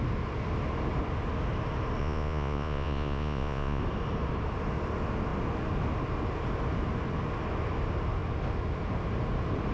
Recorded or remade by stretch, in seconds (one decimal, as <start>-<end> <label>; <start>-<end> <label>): 0.0-2.0 recorded; 2.0-3.8 remade; 3.8-9.7 recorded